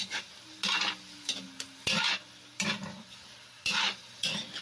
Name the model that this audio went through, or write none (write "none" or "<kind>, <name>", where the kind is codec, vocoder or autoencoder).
none